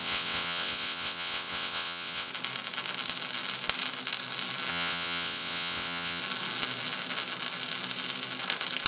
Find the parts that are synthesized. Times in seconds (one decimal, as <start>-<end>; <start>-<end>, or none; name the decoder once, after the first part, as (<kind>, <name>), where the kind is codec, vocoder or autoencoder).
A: 0.0-2.3 (vocoder, WaveNeXt); 4.7-6.2